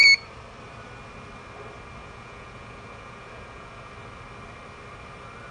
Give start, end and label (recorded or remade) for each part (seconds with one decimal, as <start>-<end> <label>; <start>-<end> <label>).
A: 0.0-2.0 recorded; 2.0-3.9 remade; 3.9-5.5 recorded